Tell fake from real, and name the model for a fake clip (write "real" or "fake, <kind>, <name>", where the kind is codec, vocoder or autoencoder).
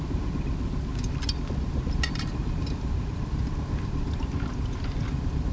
real